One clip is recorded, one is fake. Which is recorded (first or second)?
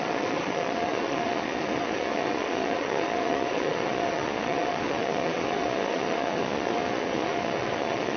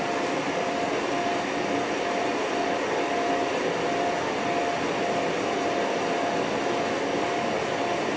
second